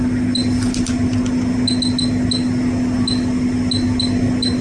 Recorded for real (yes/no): yes